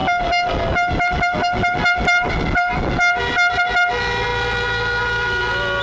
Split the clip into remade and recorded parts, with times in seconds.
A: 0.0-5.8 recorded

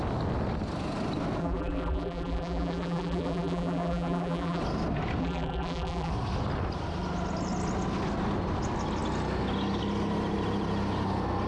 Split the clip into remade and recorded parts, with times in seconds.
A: 0.0-1.4 recorded; 1.4-4.6 remade; 4.6-5.2 recorded; 5.2-6.1 remade; 6.1-11.5 recorded

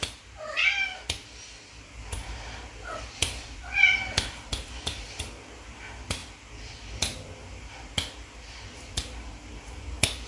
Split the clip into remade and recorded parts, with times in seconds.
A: 0.0-10.3 recorded

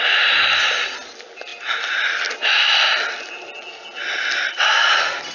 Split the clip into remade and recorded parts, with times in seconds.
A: 0.0-5.3 recorded

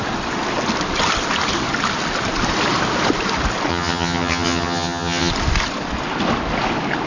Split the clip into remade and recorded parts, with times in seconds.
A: 0.0-3.7 recorded; 3.7-5.3 remade; 5.3-7.1 recorded

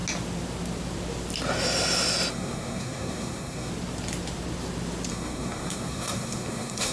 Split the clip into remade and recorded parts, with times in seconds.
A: 0.0-2.3 recorded; 2.3-3.7 remade; 3.7-5.1 recorded; 5.1-6.9 remade

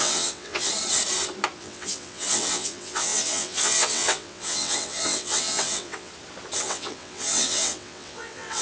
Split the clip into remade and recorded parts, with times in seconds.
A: 0.0-0.7 remade; 0.7-1.6 recorded; 1.6-6.1 remade; 6.1-6.6 recorded; 6.6-8.6 remade

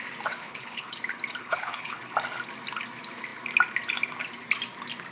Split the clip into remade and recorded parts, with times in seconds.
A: 0.0-0.4 recorded; 0.4-0.9 remade; 0.9-1.4 recorded; 1.4-2.0 remade; 2.0-5.1 recorded